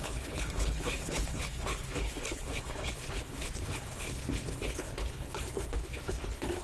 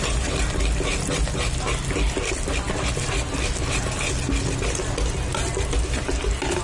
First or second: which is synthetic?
first